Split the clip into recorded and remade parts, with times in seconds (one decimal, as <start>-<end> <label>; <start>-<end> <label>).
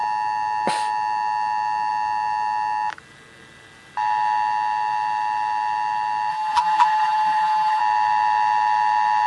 0.0-6.3 recorded; 6.3-7.8 remade; 7.8-9.3 recorded